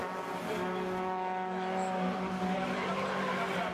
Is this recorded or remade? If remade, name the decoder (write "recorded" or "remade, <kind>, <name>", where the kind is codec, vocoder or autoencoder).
recorded